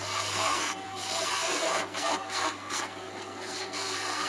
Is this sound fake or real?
fake